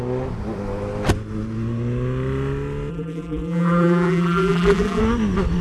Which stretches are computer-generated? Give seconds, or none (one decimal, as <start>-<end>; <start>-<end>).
2.9-5.0

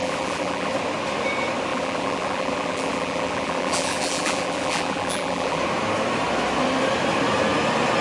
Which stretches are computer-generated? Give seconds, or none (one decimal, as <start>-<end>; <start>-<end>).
0.0-0.7; 1.7-5.6

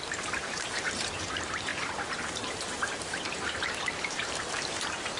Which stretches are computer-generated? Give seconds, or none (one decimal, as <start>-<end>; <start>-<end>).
0.0-5.2

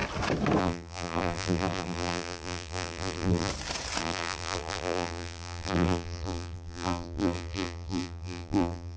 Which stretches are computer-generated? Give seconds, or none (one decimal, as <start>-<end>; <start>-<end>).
0.6-3.5; 4.0-9.0

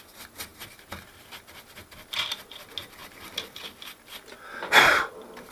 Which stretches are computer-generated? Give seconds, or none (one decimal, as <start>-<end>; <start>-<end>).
none

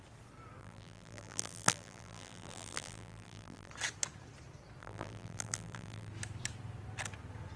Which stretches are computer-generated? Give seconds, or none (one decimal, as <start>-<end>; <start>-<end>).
0.6-3.7; 4.8-6.1